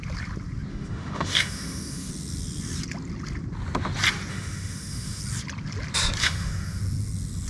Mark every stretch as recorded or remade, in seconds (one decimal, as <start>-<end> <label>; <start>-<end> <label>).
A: 0.0-0.7 recorded; 0.7-2.1 remade; 2.1-4.3 recorded; 4.3-5.2 remade; 5.2-6.2 recorded; 6.2-6.8 remade; 6.8-7.5 recorded